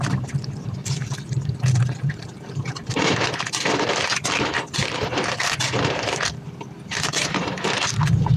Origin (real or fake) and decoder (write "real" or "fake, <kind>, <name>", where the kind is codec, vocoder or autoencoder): fake, vocoder, BigVGAN v2